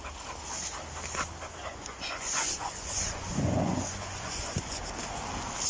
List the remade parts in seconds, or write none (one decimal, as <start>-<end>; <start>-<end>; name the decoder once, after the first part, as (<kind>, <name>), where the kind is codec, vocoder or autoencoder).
1.7-4.8 (vocoder, Vocos)